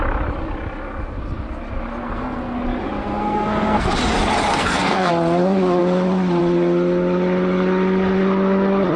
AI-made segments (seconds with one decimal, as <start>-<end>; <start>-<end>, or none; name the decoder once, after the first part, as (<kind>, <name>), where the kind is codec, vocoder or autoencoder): 2.0-2.6 (codec, SNAC); 3.0-3.9; 4.5-5.1